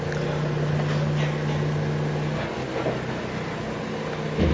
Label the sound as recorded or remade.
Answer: recorded